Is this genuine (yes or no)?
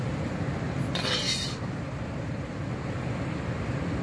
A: no